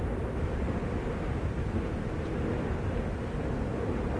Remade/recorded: recorded